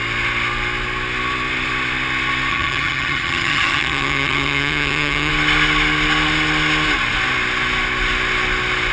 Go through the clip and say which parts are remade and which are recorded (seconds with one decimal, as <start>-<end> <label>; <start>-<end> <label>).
0.0-2.5 recorded; 2.5-5.3 remade; 5.3-8.9 recorded